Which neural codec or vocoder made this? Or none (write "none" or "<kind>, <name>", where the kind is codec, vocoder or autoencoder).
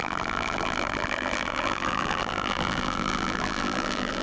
vocoder, BigVGAN v2